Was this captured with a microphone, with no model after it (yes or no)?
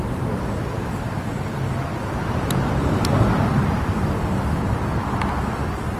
no